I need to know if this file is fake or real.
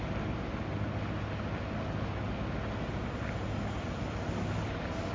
real